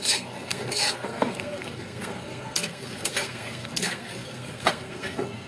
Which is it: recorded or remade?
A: remade